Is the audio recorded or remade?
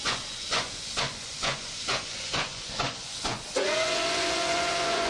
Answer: remade